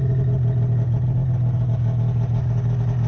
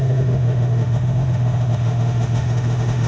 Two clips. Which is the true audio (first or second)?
first